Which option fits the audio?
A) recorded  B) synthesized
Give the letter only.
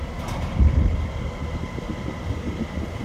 A